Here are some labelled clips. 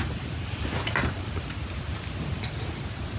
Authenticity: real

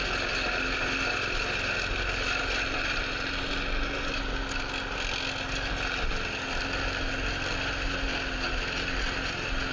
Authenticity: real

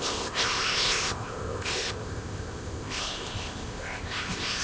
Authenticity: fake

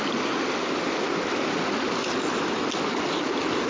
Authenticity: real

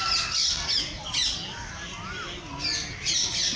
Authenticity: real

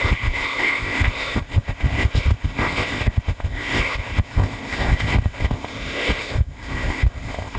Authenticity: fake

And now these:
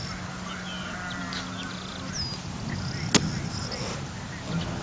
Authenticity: real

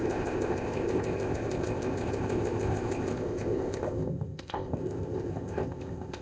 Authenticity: fake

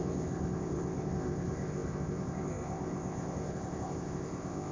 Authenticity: fake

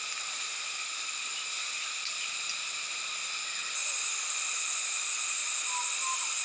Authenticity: real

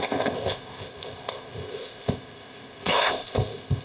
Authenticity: fake